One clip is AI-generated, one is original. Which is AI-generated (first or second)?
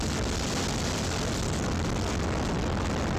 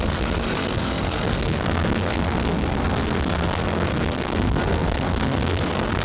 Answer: second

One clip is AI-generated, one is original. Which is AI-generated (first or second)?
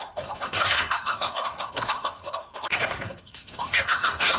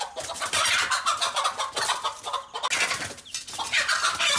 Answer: first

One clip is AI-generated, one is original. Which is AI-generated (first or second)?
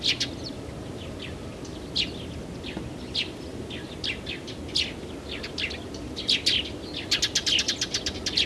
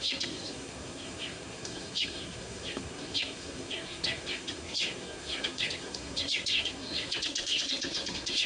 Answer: second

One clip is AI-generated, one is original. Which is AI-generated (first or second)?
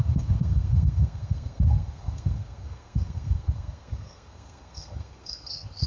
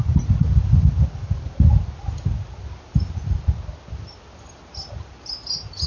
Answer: first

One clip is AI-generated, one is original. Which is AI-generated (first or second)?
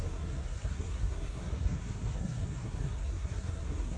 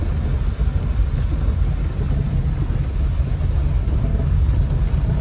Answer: first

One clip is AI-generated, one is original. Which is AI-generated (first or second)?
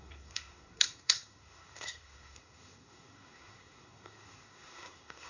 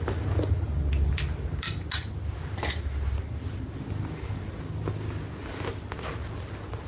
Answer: first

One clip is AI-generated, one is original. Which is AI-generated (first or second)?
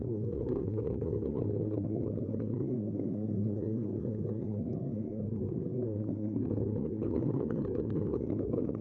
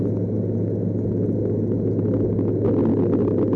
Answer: first